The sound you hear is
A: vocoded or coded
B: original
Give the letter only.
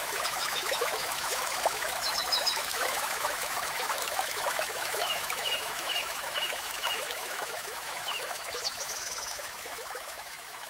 A